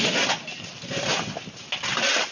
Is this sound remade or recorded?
recorded